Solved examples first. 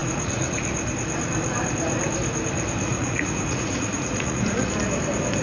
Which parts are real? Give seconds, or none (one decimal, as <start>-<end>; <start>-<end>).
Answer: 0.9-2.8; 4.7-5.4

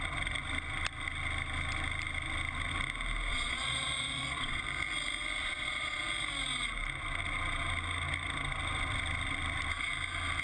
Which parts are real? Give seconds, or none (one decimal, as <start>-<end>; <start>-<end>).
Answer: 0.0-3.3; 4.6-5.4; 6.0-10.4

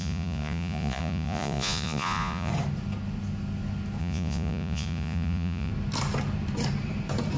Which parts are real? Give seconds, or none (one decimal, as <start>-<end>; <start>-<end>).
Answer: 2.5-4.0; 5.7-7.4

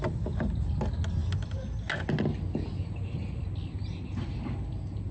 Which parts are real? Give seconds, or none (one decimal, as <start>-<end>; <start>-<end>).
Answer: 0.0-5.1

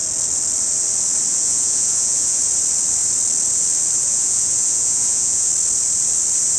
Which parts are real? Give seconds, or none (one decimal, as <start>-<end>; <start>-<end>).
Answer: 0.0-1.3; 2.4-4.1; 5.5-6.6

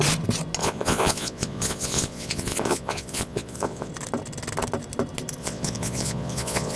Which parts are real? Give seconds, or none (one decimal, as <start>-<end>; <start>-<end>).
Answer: 0.0-0.6; 3.9-5.4

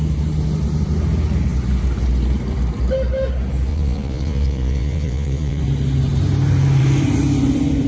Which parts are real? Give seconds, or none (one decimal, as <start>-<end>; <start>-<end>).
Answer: 0.0-3.7; 5.6-7.9

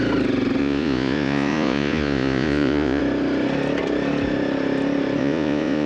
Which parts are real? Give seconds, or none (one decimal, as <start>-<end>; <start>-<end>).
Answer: 0.0-0.6; 3.0-5.2